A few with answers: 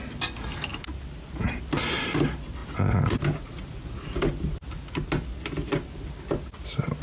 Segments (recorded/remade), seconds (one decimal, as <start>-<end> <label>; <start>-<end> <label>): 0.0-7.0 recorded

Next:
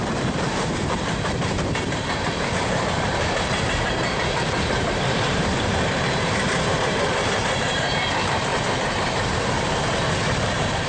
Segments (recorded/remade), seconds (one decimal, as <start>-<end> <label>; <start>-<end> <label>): 0.0-8.5 remade; 8.5-9.3 recorded; 9.3-10.9 remade

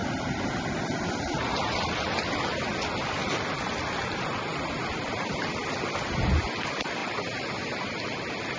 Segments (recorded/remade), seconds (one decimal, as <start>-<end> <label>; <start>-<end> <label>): 0.0-0.7 remade; 0.7-1.5 recorded; 1.5-2.4 remade; 2.4-7.0 recorded; 7.0-7.6 remade; 7.6-8.6 recorded

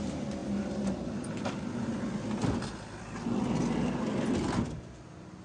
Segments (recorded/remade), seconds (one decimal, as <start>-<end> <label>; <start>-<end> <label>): 0.0-5.4 recorded

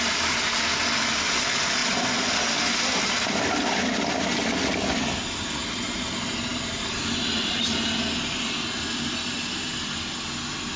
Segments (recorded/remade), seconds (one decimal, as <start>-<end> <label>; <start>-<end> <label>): 0.0-10.8 recorded

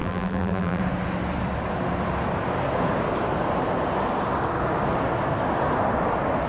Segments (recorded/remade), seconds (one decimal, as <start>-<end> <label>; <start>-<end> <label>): 0.0-0.8 remade; 0.8-6.5 recorded

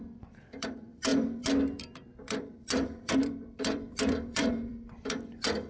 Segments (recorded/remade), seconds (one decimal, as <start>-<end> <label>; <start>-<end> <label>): 0.0-5.7 remade